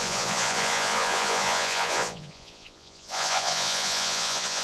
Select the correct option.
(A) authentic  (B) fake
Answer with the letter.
B